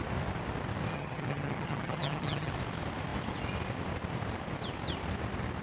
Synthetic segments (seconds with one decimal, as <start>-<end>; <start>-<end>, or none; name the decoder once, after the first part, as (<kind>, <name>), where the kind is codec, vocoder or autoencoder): 0.9-2.5 (vocoder, HiFi-GAN)